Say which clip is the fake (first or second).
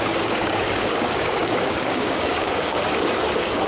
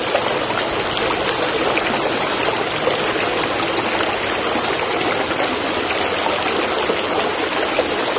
first